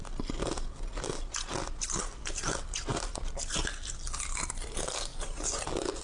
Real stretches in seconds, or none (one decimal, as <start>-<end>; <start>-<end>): 0.0-6.0